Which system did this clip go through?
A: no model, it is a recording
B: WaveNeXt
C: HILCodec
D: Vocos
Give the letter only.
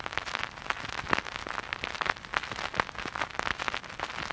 A